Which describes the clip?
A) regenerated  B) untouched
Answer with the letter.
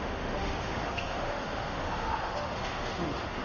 A